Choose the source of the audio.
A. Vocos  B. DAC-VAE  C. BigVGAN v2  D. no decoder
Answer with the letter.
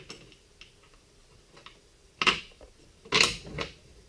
D